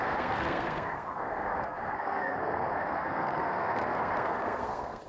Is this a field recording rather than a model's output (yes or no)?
no